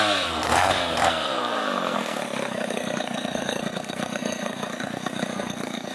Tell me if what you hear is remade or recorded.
remade